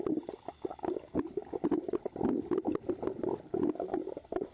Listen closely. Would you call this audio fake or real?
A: real